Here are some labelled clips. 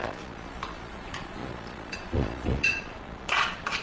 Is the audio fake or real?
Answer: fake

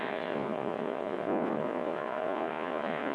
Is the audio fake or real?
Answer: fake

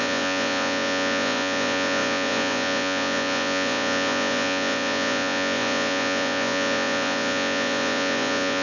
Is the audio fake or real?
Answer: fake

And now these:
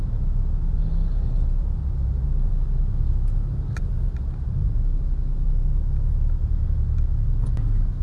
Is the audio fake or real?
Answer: real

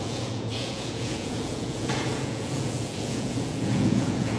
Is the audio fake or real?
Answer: fake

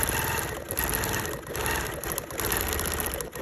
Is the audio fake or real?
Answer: real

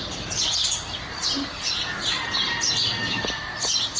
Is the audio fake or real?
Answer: real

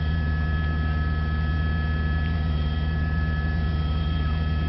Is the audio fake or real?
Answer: real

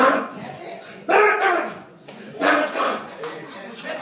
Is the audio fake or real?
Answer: fake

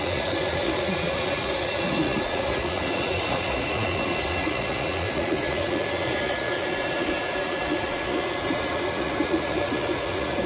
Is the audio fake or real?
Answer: fake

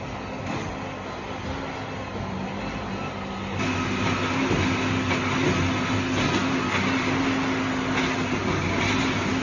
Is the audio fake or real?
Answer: real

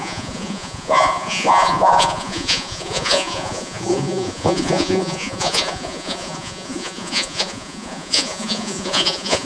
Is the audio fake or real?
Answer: fake